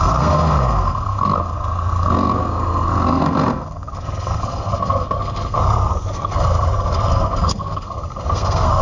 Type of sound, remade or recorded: remade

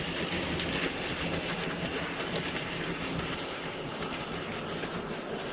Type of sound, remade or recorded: recorded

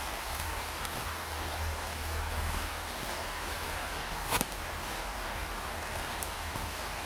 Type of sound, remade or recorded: remade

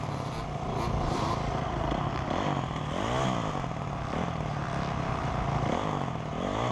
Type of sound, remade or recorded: recorded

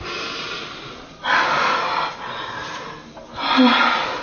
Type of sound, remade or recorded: recorded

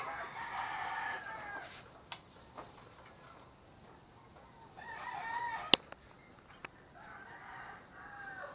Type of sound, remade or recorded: recorded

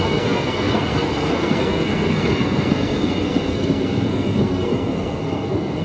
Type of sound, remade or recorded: remade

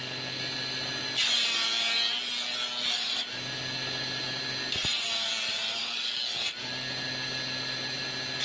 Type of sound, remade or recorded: recorded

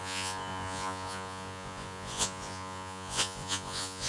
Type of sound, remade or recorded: remade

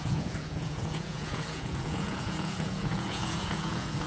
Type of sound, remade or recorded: remade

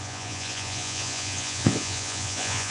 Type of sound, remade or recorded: remade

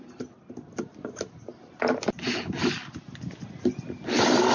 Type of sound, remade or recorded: recorded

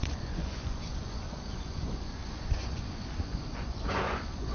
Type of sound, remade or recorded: remade